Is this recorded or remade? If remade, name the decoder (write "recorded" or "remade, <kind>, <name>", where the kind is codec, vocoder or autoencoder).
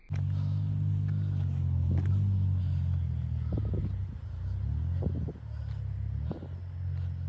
recorded